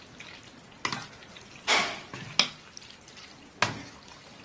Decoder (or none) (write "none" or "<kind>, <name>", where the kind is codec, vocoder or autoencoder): none